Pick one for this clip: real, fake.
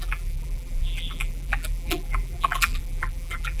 fake